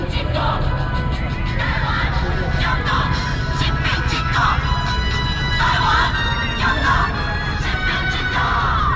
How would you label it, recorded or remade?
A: recorded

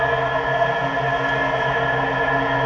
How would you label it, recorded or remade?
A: recorded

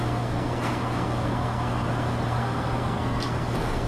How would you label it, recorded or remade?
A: remade